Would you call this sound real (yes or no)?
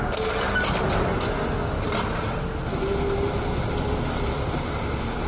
yes